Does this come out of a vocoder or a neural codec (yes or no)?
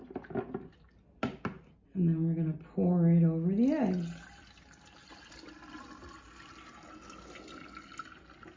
no